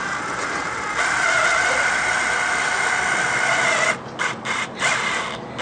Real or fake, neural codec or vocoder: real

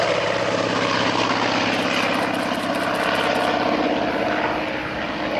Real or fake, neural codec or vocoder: real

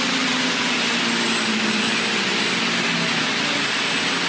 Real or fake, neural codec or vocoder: real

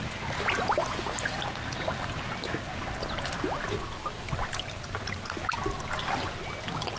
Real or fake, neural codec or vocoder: real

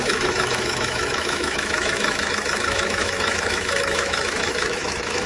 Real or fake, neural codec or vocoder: fake, autoencoder, DAC-VAE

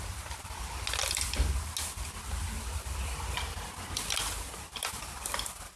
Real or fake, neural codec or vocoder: real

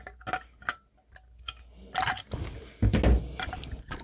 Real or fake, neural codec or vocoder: real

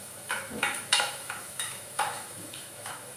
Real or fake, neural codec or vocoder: fake, autoencoder, DAC-VAE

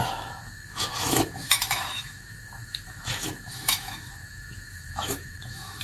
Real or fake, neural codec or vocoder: fake, autoencoder, DAC-VAE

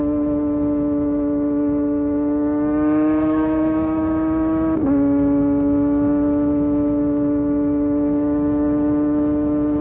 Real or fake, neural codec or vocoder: fake, autoencoder, DAC-VAE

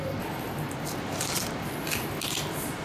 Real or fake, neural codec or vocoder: real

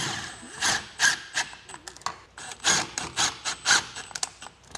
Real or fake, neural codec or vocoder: real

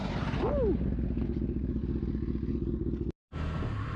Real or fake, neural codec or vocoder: real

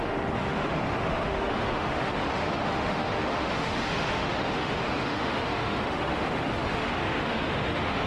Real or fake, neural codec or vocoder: fake, autoencoder, DAC-VAE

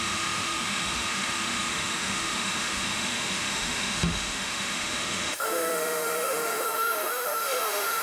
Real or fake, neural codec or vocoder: fake, autoencoder, DAC-VAE